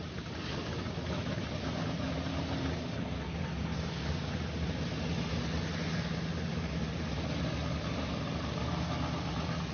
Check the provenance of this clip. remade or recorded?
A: recorded